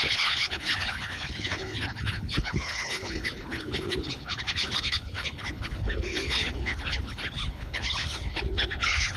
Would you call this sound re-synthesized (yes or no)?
yes